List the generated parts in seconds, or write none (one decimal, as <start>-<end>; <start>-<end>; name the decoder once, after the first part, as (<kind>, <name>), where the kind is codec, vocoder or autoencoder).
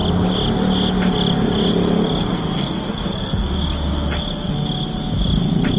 2.3-3.5 (codec, SNAC)